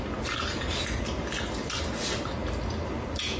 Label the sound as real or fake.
real